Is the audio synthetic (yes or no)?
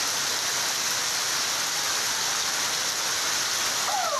no